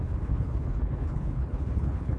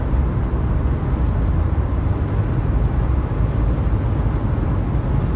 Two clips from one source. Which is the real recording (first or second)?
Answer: second